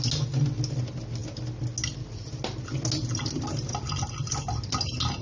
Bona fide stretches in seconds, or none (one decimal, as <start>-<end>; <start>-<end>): 0.0-5.2